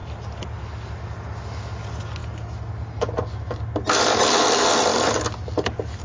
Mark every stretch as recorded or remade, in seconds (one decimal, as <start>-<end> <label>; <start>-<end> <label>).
0.0-6.0 recorded